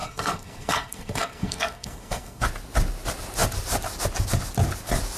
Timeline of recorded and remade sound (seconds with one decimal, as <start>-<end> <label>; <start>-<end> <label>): 0.0-2.4 remade; 2.4-5.2 recorded